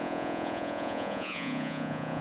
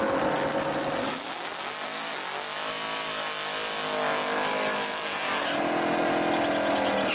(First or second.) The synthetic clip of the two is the first